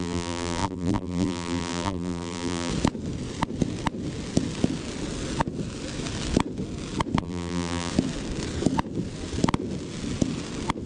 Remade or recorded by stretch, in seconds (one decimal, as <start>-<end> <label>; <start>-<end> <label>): 0.0-2.7 remade; 2.7-7.2 recorded; 7.2-7.9 remade; 7.9-10.9 recorded

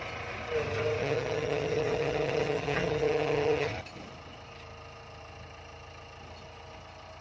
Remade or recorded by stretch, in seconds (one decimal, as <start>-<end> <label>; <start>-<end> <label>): 0.0-1.0 recorded; 1.0-3.7 remade; 3.7-7.2 recorded